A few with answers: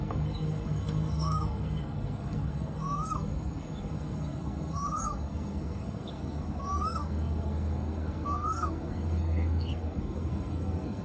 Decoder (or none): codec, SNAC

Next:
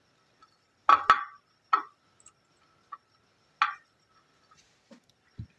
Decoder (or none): none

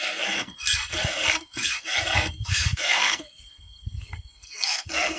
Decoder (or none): codec, SNAC